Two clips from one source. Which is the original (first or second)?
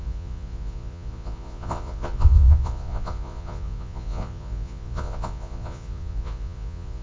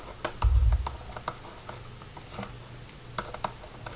second